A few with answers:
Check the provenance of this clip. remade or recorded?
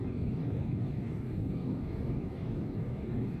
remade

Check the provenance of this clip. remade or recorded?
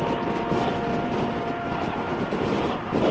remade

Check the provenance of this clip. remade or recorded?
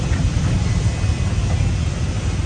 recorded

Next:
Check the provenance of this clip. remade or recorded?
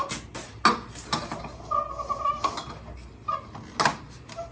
recorded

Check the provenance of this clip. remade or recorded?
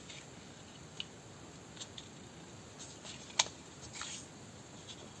recorded